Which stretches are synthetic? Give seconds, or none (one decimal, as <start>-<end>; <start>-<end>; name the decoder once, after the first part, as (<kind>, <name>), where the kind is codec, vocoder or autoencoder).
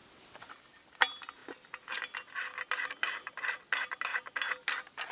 none